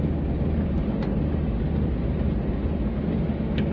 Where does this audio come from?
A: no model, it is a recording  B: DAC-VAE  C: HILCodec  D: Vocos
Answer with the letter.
A